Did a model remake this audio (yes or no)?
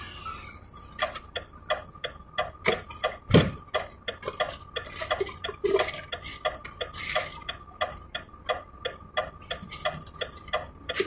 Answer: no